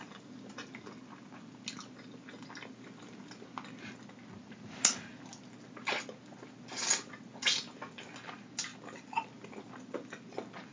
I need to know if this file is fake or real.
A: real